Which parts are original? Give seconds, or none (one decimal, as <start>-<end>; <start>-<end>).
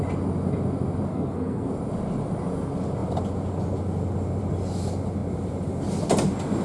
0.0-1.1; 1.7-6.6